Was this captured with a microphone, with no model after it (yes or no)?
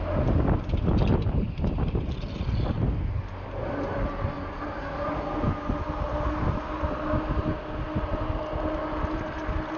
yes